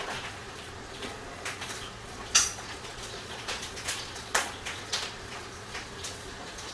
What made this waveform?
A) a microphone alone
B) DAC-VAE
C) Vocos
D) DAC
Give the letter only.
C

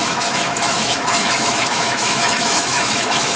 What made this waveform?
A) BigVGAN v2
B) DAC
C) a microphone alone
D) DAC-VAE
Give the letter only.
D